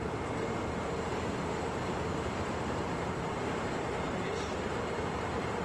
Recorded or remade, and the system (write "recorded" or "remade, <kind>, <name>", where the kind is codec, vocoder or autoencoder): remade, vocoder, BigVGAN v2